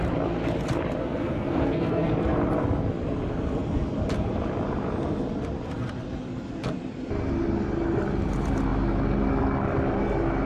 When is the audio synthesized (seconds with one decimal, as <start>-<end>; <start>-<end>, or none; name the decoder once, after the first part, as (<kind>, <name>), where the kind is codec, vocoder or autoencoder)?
1.0-2.1 (codec, SNAC)